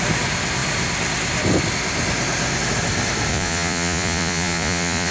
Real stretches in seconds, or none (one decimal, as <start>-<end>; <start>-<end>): 0.0-3.3